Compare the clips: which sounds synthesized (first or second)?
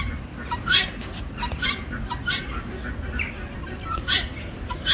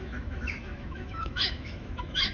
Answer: second